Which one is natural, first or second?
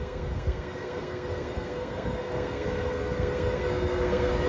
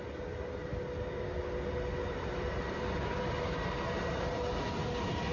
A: second